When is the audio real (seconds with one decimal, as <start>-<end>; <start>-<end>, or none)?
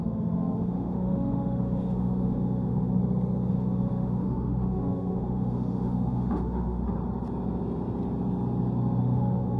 3.0-3.5; 6.8-9.0